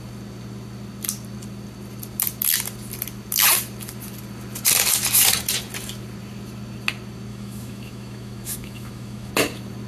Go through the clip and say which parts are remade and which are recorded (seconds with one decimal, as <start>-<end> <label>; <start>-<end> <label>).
0.0-7.3 recorded; 7.3-9.3 remade; 9.3-9.9 recorded